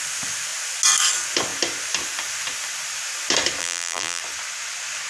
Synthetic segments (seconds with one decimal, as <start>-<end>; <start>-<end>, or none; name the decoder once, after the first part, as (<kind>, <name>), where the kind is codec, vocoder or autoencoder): 3.6-4.2 (vocoder, BigVGAN v2)